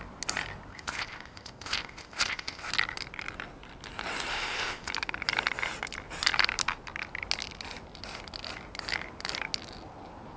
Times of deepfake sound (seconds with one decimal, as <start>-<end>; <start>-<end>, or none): 0.7-2.7; 4.3-4.9